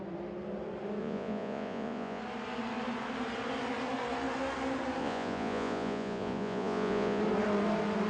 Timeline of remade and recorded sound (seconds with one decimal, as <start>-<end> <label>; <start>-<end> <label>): 0.0-1.0 recorded; 1.0-2.2 remade; 2.2-5.0 recorded; 5.0-7.2 remade; 7.2-8.1 recorded